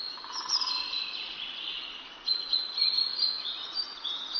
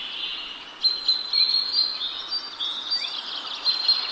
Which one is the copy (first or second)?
first